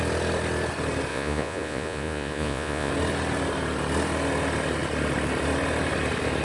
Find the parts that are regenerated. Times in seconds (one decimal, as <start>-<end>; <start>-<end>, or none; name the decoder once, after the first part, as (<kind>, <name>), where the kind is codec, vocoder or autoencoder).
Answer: 1.1-2.9 (vocoder, Vocos)